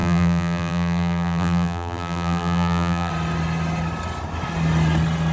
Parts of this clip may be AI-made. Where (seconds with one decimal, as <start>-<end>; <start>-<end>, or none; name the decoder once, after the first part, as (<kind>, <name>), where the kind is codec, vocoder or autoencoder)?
0.0-3.1 (vocoder, BigVGAN v2)